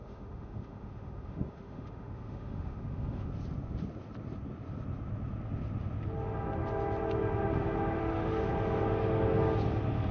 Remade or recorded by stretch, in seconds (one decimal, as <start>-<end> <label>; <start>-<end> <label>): 0.0-3.3 remade; 3.3-8.0 recorded; 8.0-8.5 remade; 8.5-10.1 recorded